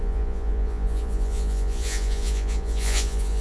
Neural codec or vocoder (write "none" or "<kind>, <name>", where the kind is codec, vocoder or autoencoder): vocoder, Vocos